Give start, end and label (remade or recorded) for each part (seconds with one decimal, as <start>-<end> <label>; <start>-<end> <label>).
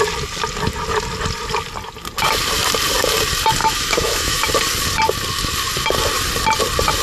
0.0-3.6 recorded; 3.6-4.5 remade; 4.5-7.0 recorded